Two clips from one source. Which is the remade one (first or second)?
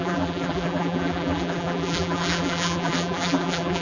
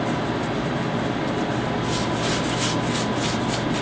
first